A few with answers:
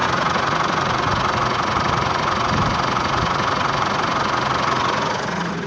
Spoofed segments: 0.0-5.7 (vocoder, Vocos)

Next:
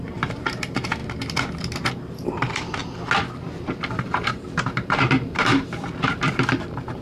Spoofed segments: 0.0-1.0 (vocoder, BigVGAN v2); 1.9-2.8; 3.9-7.0

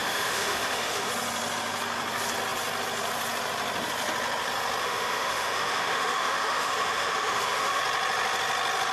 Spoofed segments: 0.0-1.1 (autoencoder, DAC-VAE); 4.8-7.8

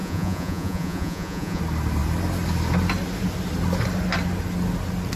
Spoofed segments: 0.0-1.6 (vocoder, Vocos)